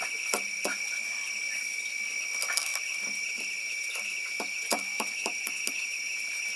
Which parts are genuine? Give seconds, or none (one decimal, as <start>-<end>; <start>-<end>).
0.0-2.7